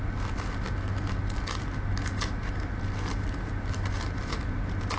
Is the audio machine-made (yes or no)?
no